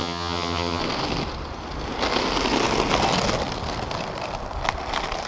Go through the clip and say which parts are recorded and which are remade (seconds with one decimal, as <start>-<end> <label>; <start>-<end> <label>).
0.0-0.8 remade; 0.8-5.3 recorded